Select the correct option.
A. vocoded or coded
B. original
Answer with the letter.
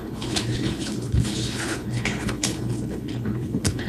A